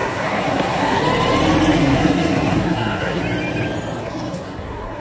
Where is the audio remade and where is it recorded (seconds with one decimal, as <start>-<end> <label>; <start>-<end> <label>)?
0.0-1.0 remade; 1.0-1.8 recorded; 1.8-3.2 remade; 3.2-4.0 recorded; 4.0-5.0 remade